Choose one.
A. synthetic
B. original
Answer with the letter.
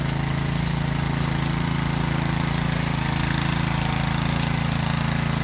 B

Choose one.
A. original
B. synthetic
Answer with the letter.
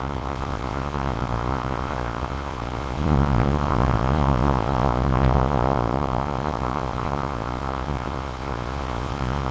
B